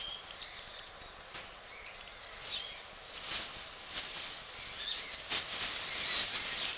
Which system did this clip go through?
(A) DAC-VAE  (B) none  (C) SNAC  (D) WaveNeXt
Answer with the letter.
B